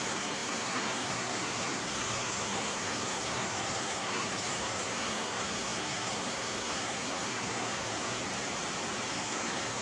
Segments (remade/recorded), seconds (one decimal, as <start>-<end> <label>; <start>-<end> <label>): 0.0-8.2 remade; 8.2-9.1 recorded; 9.1-9.8 remade